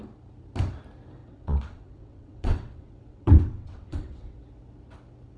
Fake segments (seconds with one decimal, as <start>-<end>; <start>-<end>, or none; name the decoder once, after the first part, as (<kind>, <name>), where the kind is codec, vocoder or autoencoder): 1.2-4.4 (vocoder, WaveNeXt)